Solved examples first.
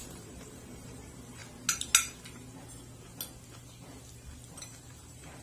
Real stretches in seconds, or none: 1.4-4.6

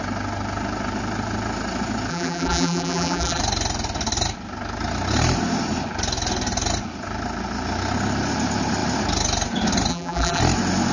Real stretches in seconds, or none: 0.0-2.1; 3.4-9.9; 10.4-10.9

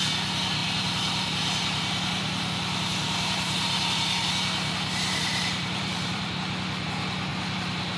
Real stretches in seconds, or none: 0.0-0.6; 4.3-5.3; 6.4-7.3

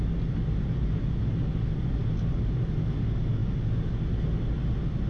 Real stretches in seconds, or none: 0.0-5.1